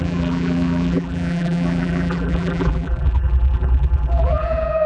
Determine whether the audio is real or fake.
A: fake